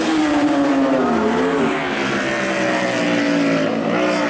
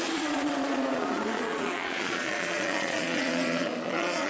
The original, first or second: first